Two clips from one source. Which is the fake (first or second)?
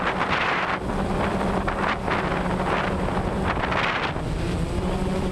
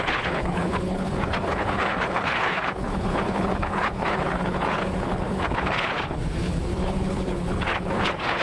second